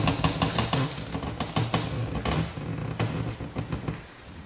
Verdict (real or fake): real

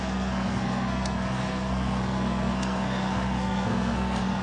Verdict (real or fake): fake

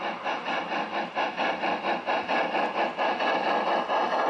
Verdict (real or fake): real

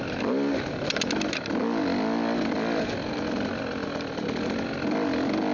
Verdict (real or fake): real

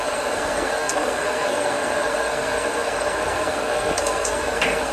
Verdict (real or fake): fake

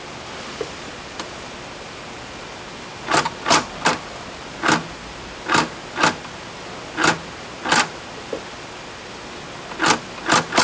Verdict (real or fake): real